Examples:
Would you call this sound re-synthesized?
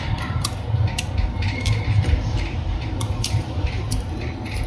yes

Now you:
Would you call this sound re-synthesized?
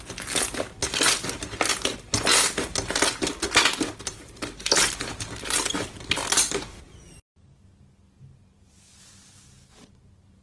no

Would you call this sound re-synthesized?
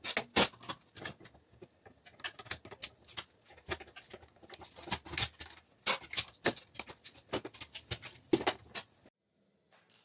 no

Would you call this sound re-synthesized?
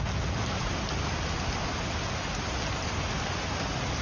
no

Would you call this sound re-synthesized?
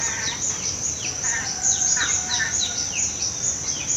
no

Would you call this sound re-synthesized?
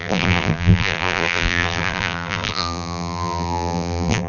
yes